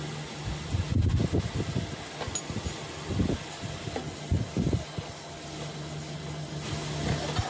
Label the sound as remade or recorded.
recorded